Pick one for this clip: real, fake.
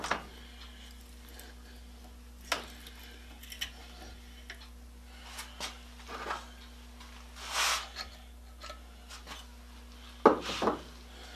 real